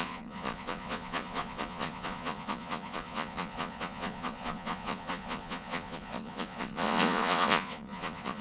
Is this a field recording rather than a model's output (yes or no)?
no